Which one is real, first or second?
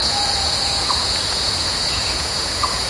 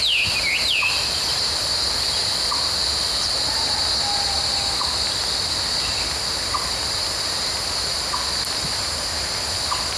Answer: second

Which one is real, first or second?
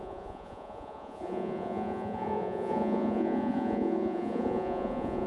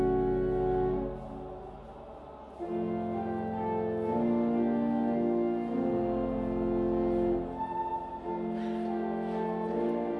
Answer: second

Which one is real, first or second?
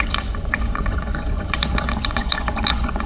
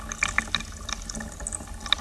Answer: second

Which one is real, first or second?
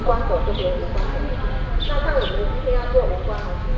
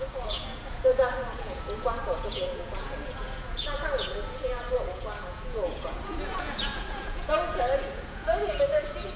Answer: first